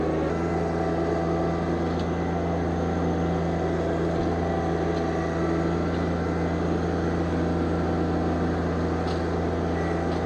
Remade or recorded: recorded